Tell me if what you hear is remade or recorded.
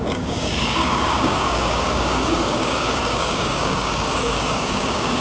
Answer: remade